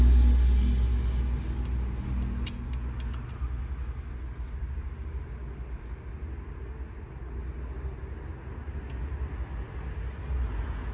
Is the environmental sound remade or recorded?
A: recorded